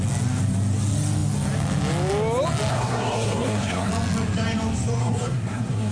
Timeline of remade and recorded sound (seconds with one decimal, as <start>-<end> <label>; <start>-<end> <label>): 0.0-2.7 recorded; 2.7-3.9 remade; 3.9-5.0 recorded; 5.0-5.9 remade